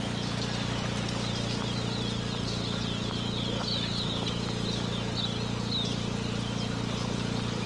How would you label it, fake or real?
real